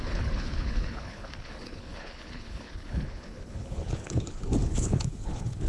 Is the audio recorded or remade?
remade